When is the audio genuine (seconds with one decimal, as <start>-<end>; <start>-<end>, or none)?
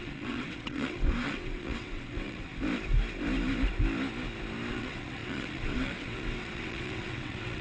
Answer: 2.5-4.7